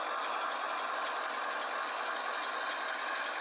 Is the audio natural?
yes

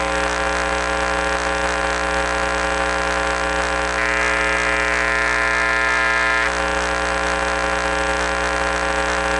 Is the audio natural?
yes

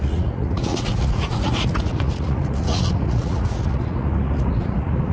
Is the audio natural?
no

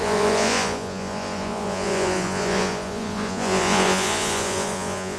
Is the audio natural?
no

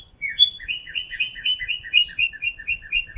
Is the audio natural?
no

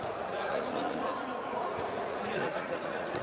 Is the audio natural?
no